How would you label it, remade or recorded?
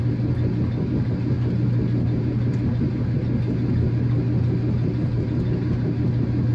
recorded